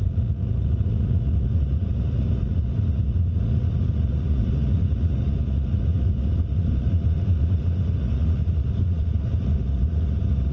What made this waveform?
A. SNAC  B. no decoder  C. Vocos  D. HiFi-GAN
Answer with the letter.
C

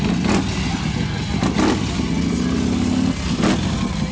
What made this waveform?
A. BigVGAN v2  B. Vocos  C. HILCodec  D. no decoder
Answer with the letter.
D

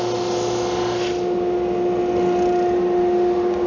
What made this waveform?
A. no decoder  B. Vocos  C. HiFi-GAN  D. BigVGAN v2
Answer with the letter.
A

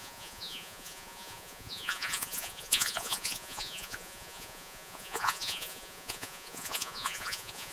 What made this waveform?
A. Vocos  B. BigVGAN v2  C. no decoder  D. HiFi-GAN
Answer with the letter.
A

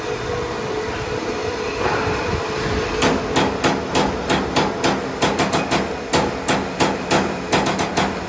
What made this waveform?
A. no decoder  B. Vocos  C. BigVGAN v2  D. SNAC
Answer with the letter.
A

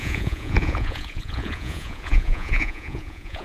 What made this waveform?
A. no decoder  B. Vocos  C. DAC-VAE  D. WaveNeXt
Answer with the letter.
B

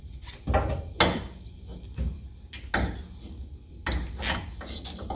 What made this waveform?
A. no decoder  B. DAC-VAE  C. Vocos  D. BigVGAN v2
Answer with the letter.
A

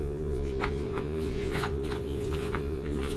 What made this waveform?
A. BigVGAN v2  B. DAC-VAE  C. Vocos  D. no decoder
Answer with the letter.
C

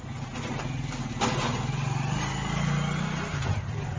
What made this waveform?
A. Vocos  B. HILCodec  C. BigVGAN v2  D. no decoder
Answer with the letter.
D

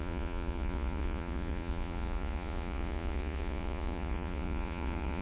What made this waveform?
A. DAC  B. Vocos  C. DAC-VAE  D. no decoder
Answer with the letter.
B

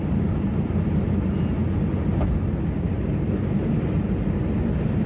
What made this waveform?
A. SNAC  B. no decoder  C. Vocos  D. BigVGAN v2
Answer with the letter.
B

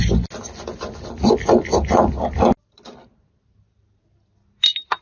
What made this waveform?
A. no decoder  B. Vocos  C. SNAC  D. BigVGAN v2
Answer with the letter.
A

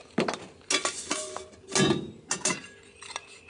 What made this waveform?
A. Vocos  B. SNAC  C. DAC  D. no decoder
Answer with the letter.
D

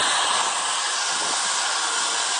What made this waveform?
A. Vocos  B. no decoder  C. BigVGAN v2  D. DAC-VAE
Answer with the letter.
B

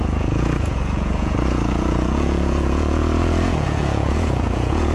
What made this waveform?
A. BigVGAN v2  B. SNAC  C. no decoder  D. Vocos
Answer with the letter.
D